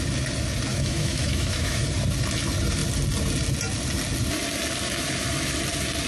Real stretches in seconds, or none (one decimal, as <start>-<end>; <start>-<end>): 0.0-0.7; 1.8-6.1